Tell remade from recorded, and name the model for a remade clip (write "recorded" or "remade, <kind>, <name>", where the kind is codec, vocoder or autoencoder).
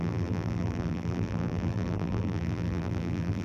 remade, vocoder, BigVGAN v2